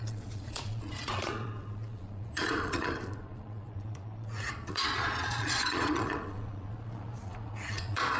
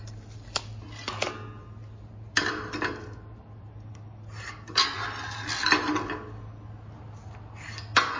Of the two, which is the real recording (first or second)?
second